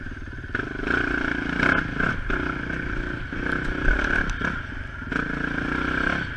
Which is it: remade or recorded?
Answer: recorded